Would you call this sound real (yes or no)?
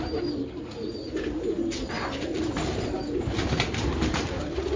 yes